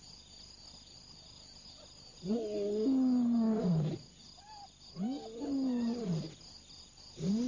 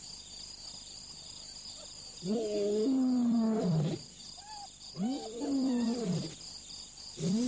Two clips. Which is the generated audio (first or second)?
second